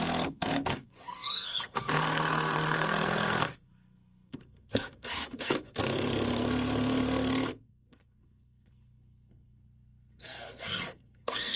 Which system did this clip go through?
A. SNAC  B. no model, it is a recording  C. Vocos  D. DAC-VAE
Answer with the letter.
A